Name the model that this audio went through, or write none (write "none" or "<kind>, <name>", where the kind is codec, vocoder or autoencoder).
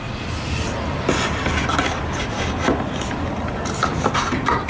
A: none